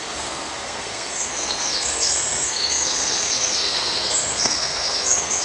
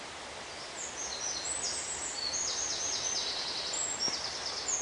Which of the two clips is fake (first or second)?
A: first